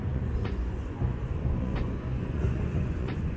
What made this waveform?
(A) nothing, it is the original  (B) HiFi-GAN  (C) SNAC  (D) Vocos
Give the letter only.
D